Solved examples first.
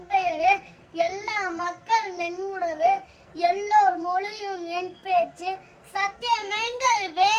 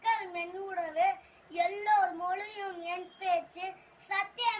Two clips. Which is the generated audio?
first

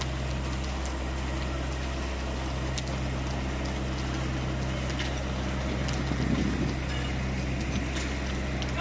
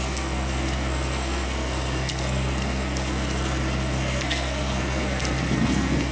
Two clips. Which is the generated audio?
second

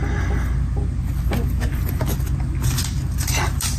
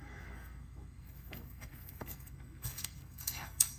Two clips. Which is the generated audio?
second